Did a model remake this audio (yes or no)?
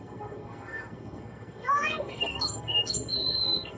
yes